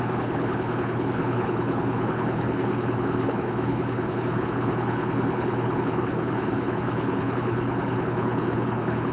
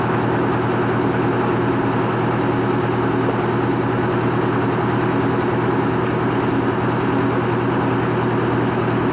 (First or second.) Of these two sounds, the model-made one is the first